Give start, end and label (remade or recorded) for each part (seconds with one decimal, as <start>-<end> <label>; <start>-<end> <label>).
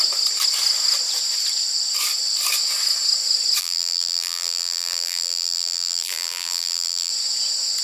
0.0-3.6 recorded; 3.6-7.1 remade; 7.1-7.8 recorded